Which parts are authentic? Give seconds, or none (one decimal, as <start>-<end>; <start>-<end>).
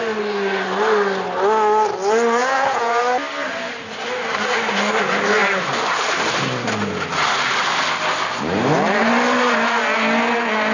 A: 0.0-2.4; 3.0-10.7